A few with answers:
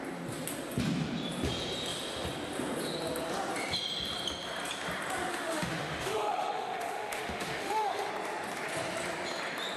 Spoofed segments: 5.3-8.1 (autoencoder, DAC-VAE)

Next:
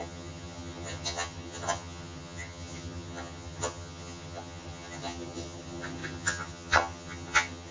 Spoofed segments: 0.0-7.7 (vocoder, HiFi-GAN)